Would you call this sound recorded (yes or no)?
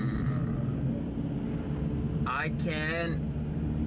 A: yes